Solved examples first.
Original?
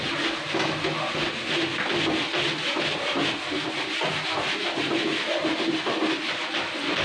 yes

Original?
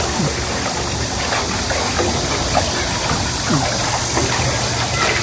yes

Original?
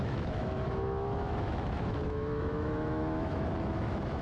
no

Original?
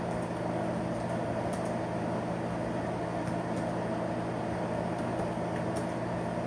yes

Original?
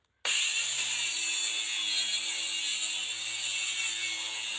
yes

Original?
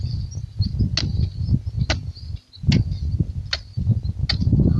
yes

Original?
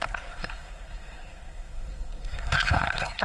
no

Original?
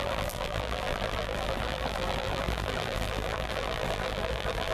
no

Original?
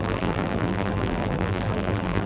no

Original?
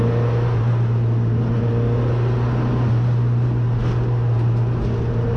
yes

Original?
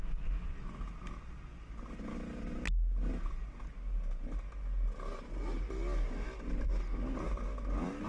yes